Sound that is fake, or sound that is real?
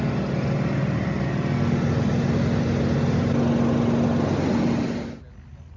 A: real